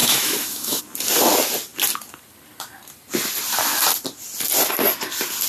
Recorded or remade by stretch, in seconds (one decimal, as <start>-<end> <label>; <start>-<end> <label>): 0.0-0.8 remade; 0.8-5.5 recorded